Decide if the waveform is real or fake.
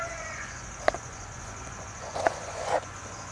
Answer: fake